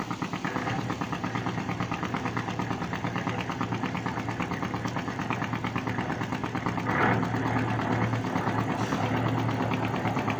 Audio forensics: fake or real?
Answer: real